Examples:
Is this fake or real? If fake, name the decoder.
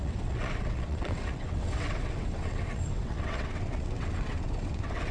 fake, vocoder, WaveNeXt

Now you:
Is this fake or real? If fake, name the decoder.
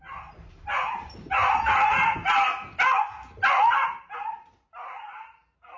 real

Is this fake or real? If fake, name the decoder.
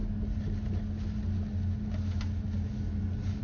real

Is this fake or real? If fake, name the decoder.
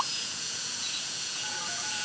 fake, vocoder, Vocos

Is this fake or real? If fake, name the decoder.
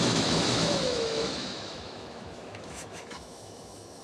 fake, autoencoder, DAC-VAE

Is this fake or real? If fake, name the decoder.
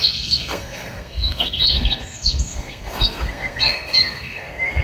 fake, codec, SNAC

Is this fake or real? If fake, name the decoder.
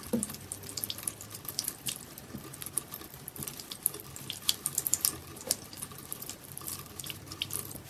fake, vocoder, BigVGAN v2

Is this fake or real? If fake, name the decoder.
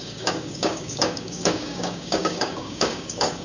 fake, codec, DAC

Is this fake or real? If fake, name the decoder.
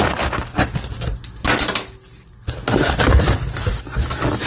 real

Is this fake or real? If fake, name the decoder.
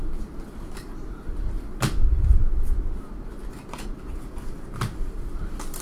real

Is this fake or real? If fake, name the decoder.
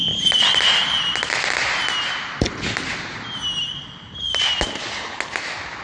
real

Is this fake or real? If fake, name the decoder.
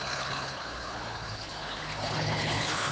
fake, codec, HILCodec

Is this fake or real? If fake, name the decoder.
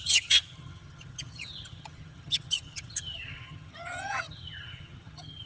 fake, vocoder, HiFi-GAN